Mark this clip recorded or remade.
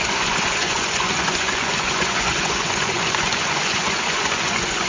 remade